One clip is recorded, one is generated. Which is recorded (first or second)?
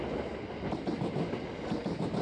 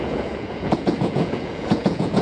first